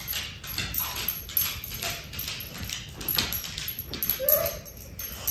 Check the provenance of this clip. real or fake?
real